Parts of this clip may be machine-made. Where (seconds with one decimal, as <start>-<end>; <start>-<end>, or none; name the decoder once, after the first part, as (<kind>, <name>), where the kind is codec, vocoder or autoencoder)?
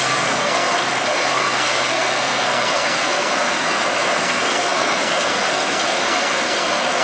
0.0-7.0 (codec, SNAC)